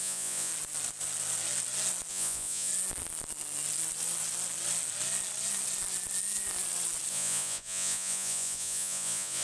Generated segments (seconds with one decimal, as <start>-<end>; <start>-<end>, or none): 0.0-0.5; 2.1-2.7; 7.1-9.4